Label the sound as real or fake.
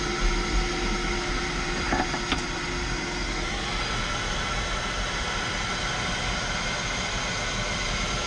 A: real